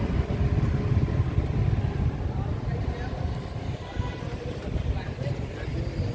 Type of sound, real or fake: real